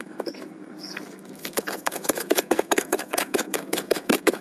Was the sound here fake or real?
fake